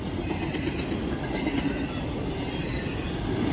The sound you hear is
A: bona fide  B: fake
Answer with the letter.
B